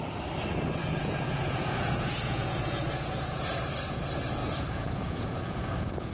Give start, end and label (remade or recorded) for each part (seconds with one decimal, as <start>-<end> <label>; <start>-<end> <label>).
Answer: 0.0-0.8 recorded; 0.8-3.5 remade; 3.5-4.4 recorded; 4.4-6.1 remade